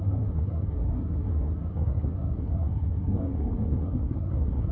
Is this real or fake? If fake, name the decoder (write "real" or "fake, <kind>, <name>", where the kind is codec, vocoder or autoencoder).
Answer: fake, codec, SNAC